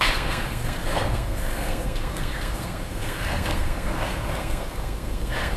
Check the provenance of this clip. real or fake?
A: fake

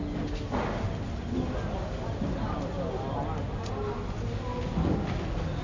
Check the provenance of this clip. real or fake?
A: real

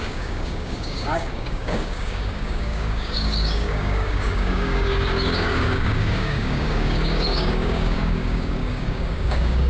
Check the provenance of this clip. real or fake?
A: fake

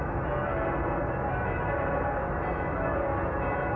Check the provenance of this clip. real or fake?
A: real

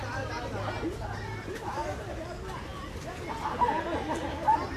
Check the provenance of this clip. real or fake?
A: real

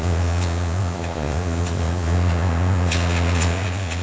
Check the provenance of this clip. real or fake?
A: fake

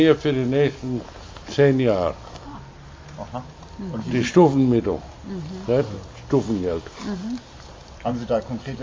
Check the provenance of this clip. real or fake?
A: real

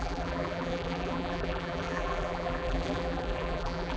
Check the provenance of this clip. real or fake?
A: fake